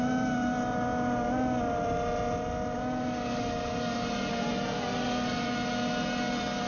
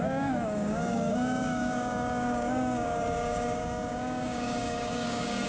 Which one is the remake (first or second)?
second